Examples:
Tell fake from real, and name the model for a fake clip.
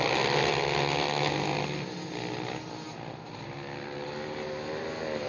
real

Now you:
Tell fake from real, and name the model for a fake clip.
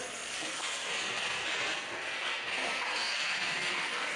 fake, codec, SNAC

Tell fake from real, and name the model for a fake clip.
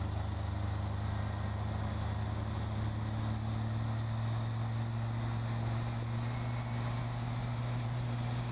real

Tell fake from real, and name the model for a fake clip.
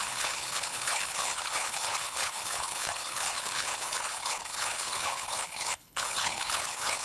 fake, codec, HILCodec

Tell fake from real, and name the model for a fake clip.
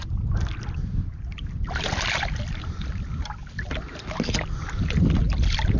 real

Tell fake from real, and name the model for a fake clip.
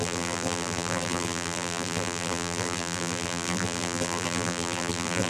fake, vocoder, BigVGAN v2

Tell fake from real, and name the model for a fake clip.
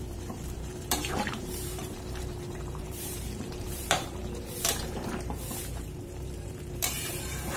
fake, vocoder, BigVGAN v2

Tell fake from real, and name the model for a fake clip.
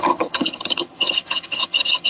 fake, vocoder, HiFi-GAN